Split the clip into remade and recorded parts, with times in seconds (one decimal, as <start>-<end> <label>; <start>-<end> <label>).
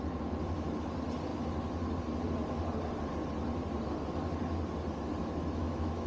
0.0-5.2 recorded; 5.2-6.1 remade